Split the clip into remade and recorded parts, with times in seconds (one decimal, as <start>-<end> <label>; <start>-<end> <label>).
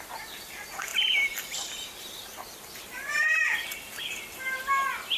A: 0.0-5.2 remade